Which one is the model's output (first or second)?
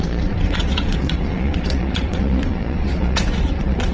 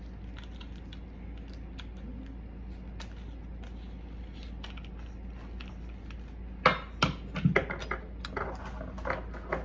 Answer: first